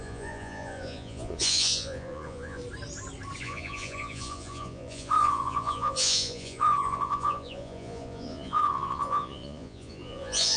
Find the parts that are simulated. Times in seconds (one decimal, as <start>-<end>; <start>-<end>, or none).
0.0-2.6; 3.4-10.6